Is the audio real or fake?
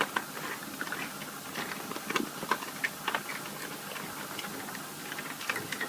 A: real